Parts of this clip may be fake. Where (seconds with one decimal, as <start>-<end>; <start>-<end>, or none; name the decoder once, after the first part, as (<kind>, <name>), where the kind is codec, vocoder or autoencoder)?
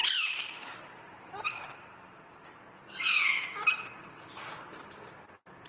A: none